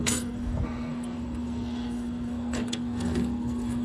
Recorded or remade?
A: remade